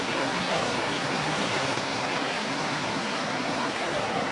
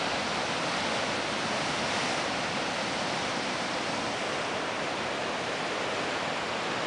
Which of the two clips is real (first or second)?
second